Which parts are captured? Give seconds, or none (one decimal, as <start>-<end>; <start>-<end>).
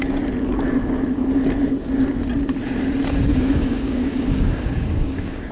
0.0-3.3